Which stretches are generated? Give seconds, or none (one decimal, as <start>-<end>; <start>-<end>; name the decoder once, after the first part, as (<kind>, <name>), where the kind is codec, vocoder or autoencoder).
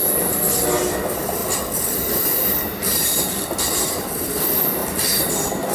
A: none